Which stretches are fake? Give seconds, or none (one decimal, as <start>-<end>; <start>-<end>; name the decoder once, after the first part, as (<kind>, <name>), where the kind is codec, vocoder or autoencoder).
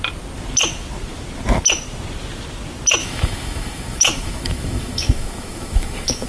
3.0-6.3 (autoencoder, DAC-VAE)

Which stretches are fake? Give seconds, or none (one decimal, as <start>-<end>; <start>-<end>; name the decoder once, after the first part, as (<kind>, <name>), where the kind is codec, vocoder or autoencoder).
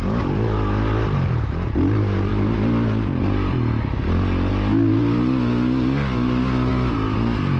none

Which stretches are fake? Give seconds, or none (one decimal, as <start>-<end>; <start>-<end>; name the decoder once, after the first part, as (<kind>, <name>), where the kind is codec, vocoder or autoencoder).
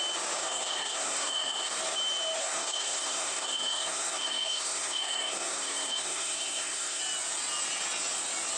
0.4-1.8 (codec, SNAC); 2.4-7.0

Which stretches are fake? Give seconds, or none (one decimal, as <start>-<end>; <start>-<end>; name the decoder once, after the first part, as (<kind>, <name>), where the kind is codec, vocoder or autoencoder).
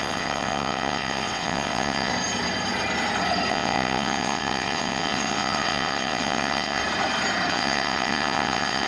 0.0-2.1 (vocoder, WaveNeXt); 3.5-6.8; 7.5-8.9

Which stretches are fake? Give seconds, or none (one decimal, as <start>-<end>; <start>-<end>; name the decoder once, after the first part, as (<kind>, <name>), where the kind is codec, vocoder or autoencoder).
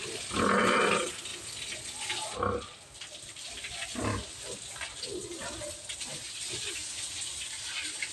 none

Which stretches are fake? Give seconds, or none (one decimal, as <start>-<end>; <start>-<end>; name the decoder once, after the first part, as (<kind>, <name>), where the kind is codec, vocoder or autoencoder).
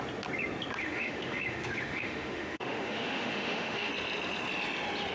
0.8-3.9 (autoencoder, DAC-VAE)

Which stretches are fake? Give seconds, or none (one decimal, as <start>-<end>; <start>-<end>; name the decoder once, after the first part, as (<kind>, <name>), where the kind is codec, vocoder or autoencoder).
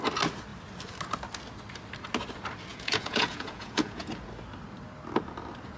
2.7-4.1 (vocoder, Vocos)